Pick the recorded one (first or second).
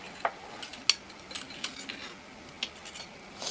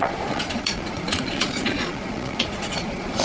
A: first